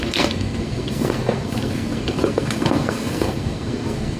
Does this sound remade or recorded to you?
remade